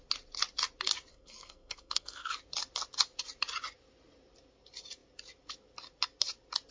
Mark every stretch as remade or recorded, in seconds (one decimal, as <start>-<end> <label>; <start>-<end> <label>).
0.0-1.1 recorded; 1.1-2.3 remade; 2.3-6.7 recorded